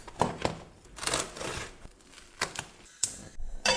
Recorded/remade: remade